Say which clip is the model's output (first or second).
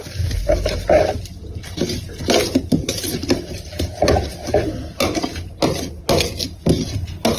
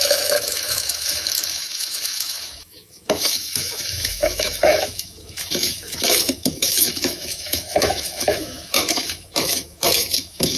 second